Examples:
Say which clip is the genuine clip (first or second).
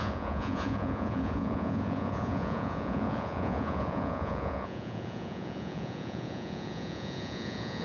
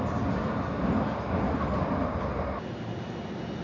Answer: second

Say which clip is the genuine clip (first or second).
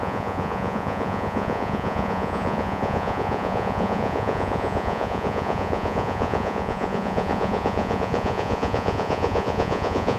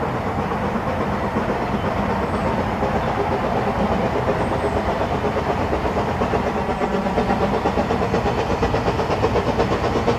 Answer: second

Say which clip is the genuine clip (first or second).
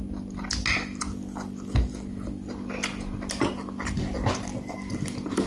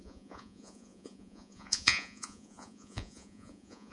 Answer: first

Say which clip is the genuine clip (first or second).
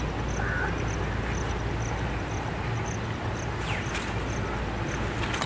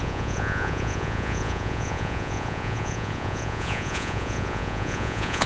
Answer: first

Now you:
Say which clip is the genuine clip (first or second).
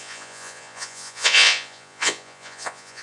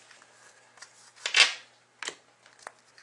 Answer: second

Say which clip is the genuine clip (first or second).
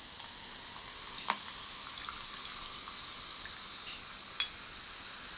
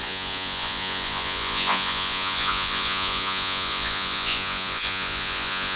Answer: first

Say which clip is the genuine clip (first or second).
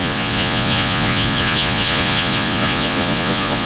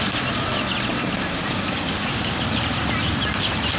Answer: second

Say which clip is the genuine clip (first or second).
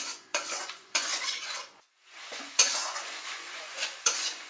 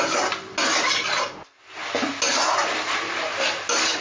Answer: second